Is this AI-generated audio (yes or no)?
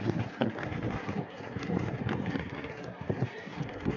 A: yes